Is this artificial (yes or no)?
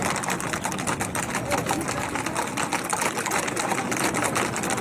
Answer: no